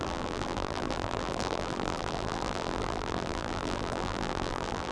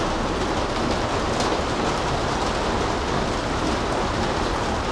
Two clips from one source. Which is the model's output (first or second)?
first